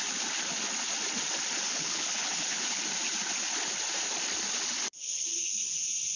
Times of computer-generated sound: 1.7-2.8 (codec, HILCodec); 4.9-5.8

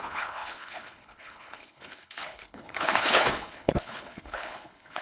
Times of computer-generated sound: 0.0-5.0 (codec, HILCodec)

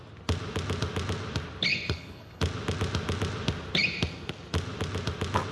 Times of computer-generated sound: 1.7-2.4 (codec, HILCodec)

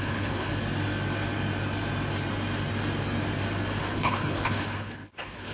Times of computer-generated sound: 0.0-0.5 (codec, HILCodec); 3.8-5.5

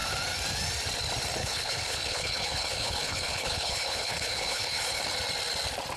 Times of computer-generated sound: 1.4-5.0 (codec, HILCodec)

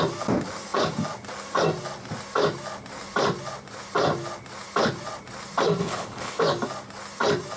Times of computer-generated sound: 5.8-6.4 (codec, HILCodec)

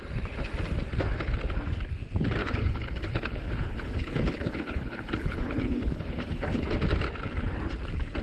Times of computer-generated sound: 2.4-6.7 (codec, HILCodec)